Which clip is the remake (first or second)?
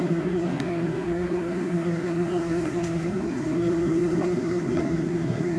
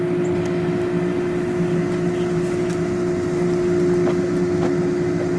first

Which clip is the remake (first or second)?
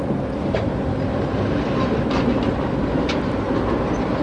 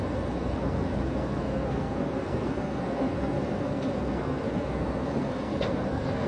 second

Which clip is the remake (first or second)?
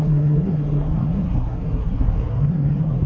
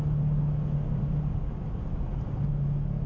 first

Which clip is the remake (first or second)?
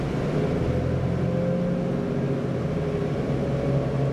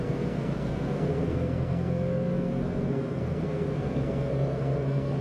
second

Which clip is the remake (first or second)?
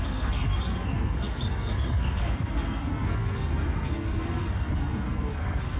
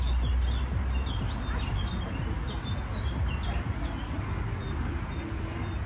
first